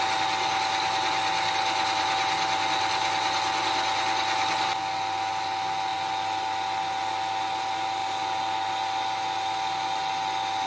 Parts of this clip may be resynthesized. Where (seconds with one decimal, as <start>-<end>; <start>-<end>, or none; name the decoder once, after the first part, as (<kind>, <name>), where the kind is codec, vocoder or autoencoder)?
none